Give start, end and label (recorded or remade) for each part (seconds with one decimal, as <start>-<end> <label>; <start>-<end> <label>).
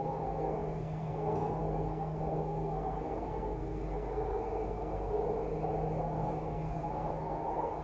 0.0-5.2 remade; 5.2-6.0 recorded; 6.0-7.8 remade